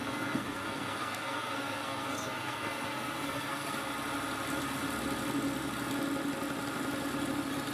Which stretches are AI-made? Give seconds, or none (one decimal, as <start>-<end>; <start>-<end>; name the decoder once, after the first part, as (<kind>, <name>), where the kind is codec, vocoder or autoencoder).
0.0-3.8 (codec, SNAC)